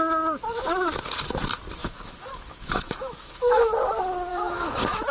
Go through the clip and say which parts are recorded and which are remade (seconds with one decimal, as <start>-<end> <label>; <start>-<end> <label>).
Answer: 0.0-1.8 recorded; 1.8-3.7 remade; 3.7-4.3 recorded; 4.3-5.1 remade